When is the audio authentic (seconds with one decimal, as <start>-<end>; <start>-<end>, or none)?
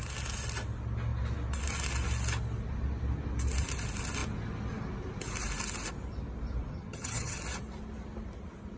0.0-6.7; 7.4-8.8